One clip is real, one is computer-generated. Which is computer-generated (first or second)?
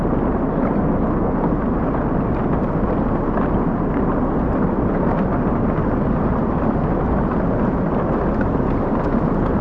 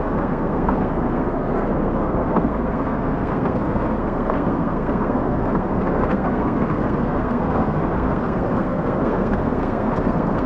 second